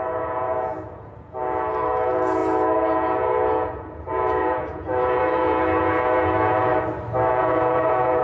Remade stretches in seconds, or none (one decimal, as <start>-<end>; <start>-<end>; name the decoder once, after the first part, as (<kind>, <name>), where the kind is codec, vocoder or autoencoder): 0.0-6.7 (vocoder, Vocos); 7.3-8.2